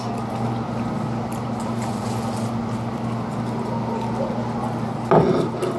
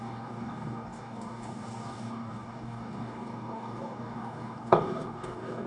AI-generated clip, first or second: second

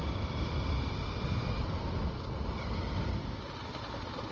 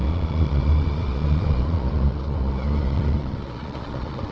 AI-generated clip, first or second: second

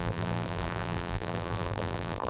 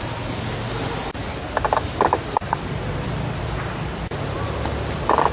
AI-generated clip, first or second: first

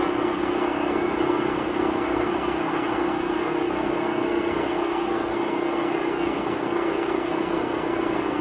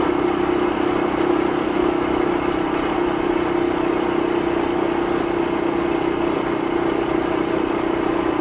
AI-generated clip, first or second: first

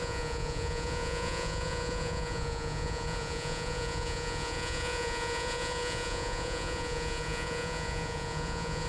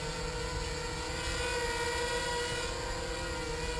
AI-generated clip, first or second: first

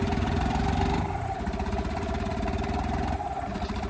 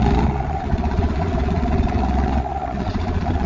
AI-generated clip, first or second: second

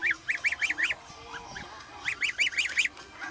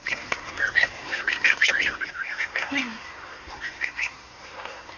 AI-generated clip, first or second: second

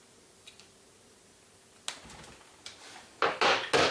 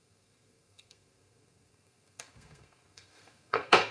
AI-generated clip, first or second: second